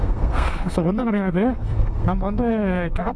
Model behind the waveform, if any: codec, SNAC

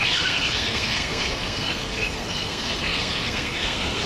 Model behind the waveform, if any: codec, SNAC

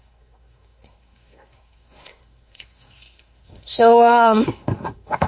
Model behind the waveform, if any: codec, SNAC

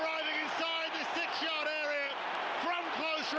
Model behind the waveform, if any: none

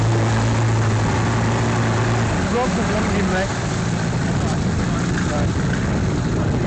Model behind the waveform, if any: none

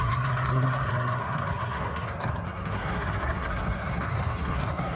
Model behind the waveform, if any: codec, SNAC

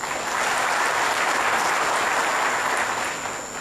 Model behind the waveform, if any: none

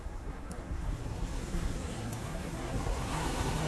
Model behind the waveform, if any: codec, SNAC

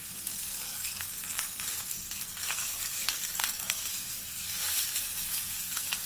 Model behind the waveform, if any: codec, SNAC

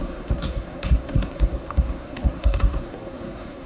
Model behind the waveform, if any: codec, SNAC